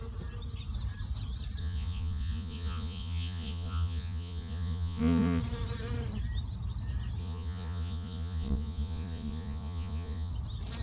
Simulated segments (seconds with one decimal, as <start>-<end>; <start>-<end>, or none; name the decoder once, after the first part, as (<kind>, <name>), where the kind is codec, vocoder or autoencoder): 1.6-5.4 (vocoder, Vocos); 7.2-10.3